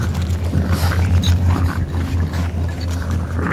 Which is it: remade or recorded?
recorded